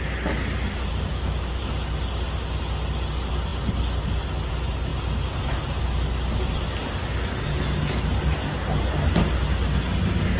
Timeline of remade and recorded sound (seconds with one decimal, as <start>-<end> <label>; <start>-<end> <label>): 0.0-0.9 recorded; 0.9-1.6 remade; 1.6-10.4 recorded